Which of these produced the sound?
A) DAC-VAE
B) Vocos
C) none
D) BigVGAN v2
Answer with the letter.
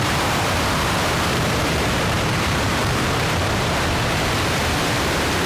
D